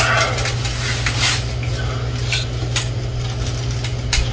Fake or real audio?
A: real